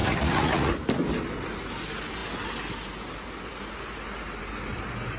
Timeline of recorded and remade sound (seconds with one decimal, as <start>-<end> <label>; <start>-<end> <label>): 0.0-0.7 remade; 0.7-5.2 recorded